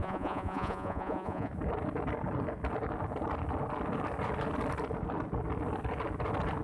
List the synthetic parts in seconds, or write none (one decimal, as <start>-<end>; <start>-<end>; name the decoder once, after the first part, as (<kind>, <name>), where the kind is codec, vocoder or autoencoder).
0.0-1.5 (vocoder, Vocos)